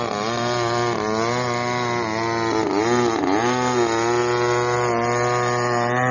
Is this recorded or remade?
recorded